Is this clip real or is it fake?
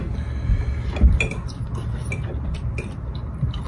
real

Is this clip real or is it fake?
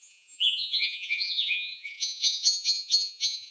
fake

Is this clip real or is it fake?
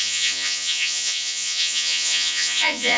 fake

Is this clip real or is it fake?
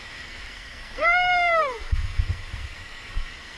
fake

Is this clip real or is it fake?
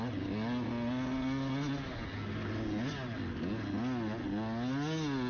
real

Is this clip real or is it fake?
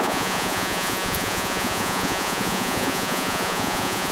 fake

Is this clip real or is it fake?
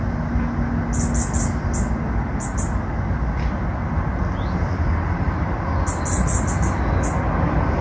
real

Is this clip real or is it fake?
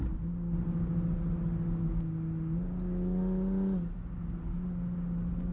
real